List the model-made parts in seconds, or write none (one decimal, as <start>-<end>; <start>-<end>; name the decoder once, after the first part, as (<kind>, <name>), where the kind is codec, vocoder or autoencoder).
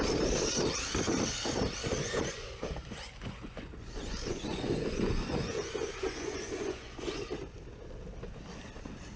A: 2.0-7.2 (vocoder, Vocos)